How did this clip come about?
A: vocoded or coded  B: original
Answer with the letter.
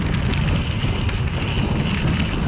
B